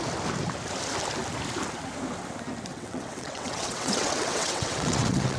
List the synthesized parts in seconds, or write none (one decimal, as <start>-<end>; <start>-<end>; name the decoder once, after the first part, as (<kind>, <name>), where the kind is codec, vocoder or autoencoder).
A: 2.7-5.4 (vocoder, WaveNeXt)